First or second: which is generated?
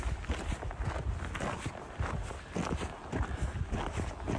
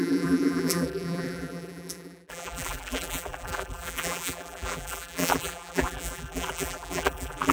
second